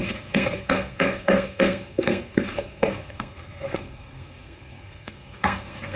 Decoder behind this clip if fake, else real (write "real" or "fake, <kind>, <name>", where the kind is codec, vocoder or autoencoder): fake, codec, SNAC